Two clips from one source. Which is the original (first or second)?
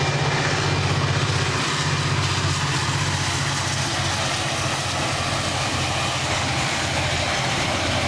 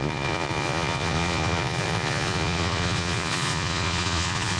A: first